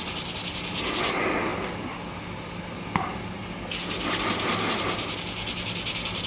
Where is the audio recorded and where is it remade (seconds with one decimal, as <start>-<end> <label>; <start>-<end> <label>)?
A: 0.0-6.3 recorded